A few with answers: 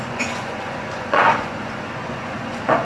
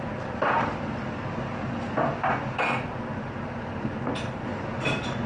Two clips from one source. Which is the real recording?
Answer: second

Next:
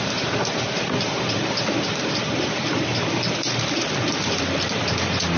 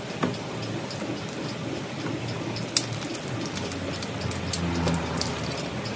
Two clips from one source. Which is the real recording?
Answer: second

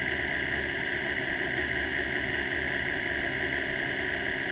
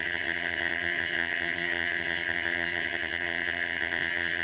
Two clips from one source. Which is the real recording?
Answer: first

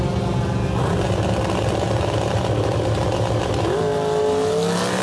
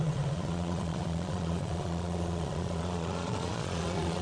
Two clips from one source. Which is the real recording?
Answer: first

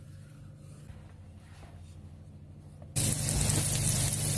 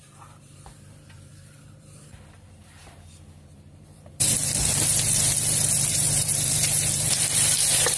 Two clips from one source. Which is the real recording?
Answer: first